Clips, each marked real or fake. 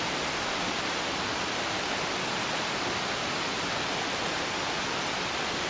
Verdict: real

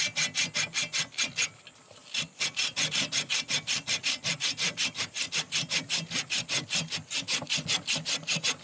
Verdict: real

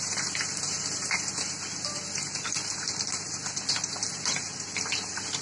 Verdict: fake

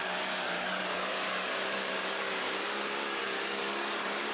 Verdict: fake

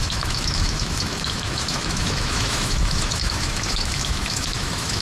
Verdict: fake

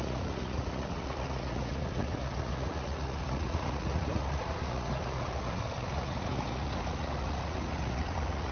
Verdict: fake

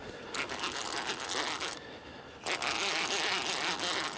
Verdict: real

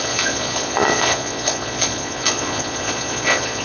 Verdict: fake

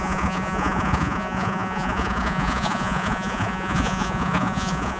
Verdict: fake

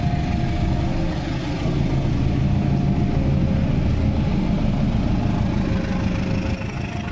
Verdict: real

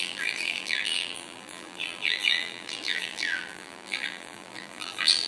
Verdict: fake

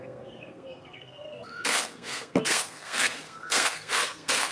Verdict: fake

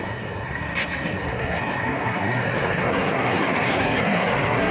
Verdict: fake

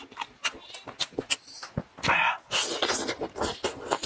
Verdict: real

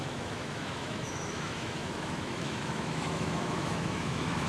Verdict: fake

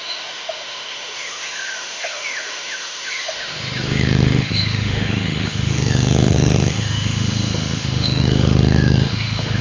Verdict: fake